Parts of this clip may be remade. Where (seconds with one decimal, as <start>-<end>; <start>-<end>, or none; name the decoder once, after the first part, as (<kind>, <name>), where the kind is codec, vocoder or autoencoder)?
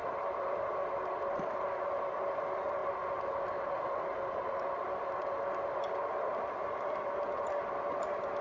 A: none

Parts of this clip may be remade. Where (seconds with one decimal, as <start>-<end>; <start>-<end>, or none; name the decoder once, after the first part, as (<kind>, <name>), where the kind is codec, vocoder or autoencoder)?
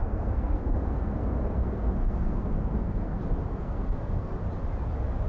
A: 0.0-3.2 (codec, SNAC); 3.6-4.3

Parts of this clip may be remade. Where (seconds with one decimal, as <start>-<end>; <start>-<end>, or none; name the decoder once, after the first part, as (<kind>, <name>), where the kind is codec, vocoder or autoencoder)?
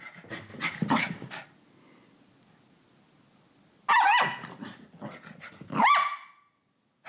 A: none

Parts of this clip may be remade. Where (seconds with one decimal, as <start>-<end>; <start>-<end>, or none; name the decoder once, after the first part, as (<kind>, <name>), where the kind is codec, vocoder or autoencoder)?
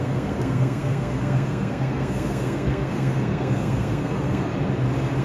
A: 0.0-4.5 (codec, SNAC)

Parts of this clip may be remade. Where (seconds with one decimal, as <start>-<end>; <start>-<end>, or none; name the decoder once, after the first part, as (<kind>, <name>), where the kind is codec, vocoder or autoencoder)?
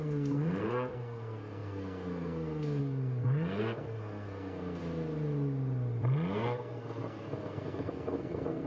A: 0.0-4.8 (codec, SNAC); 6.3-8.7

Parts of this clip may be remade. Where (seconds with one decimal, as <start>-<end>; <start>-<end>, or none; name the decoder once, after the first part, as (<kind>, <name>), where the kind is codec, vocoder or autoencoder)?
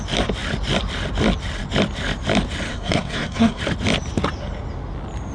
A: 2.7-3.6 (codec, SNAC)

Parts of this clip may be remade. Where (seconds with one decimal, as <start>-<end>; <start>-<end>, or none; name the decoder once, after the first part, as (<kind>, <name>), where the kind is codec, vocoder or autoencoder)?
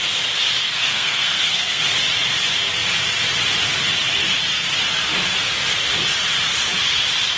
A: 0.6-1.8 (codec, SNAC)